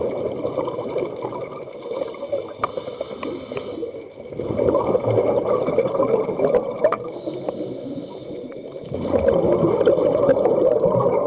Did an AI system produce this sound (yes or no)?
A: no